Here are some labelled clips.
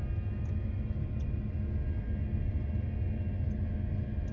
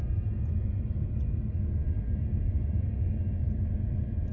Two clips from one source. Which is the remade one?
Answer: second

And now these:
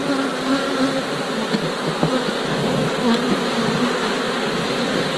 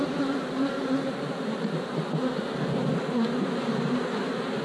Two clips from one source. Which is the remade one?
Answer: second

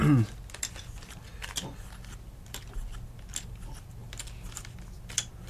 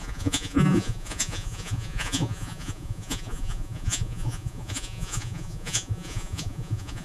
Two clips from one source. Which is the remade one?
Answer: second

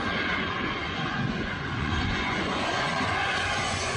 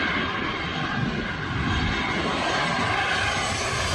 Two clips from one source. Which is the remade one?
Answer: first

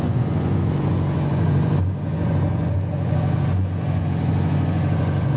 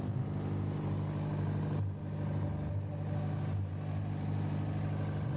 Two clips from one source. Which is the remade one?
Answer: first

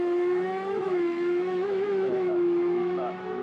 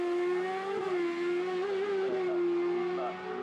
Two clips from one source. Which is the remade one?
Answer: first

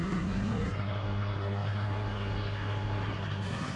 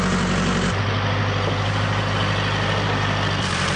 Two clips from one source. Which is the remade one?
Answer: first